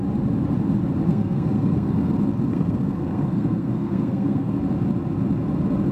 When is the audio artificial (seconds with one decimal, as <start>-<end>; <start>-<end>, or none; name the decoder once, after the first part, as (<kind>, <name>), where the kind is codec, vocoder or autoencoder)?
1.1-2.1 (codec, SNAC); 2.5-4.6